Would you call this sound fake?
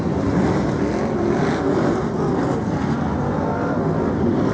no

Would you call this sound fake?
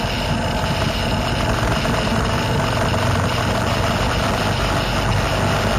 no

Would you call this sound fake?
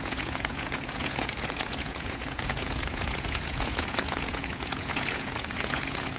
yes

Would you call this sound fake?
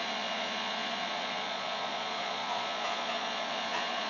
yes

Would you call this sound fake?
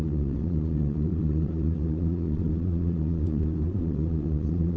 yes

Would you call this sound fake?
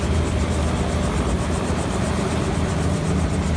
no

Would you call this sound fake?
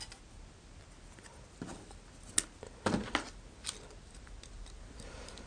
no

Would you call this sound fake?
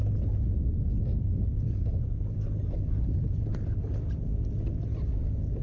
no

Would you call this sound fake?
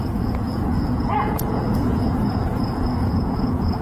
yes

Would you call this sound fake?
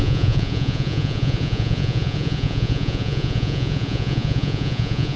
yes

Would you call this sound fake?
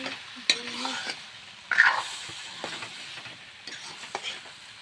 no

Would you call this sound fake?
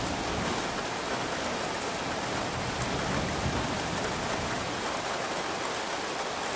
no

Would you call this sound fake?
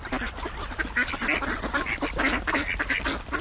no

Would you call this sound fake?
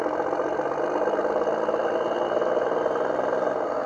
no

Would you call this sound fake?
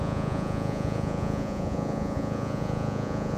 yes